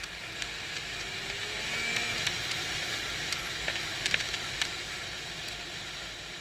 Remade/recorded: recorded